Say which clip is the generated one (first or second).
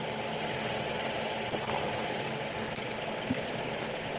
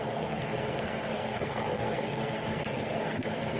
second